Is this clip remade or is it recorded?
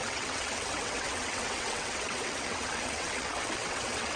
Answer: remade